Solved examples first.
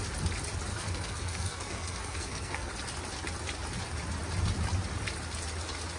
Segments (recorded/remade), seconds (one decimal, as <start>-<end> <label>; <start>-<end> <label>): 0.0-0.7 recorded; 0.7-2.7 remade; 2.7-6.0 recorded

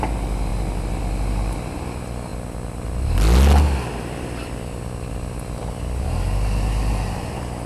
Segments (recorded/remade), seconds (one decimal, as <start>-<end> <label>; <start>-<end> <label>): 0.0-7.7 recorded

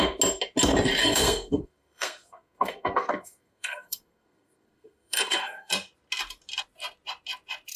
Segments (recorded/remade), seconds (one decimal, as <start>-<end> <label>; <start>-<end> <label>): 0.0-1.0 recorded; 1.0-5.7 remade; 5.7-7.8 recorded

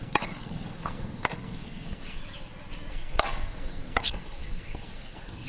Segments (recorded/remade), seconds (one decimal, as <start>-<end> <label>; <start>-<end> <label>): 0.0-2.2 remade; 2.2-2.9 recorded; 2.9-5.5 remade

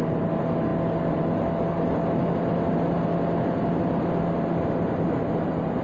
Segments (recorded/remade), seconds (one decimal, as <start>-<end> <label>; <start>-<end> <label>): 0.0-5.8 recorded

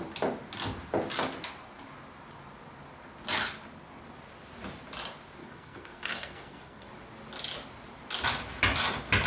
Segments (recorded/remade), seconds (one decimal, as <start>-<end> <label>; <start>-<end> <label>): 0.0-5.4 recorded; 5.4-6.9 remade; 6.9-9.3 recorded

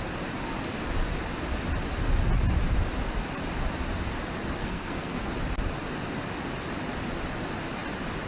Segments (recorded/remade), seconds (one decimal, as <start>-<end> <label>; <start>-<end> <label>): 0.0-4.6 recorded; 4.6-5.3 remade; 5.3-8.3 recorded

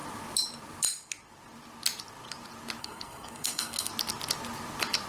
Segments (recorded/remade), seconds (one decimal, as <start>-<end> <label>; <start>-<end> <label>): 0.0-2.8 recorded; 2.8-3.9 remade; 3.9-5.1 recorded